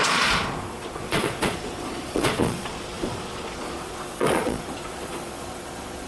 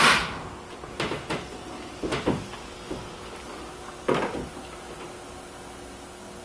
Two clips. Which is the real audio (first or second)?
second